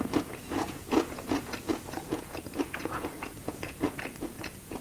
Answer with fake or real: fake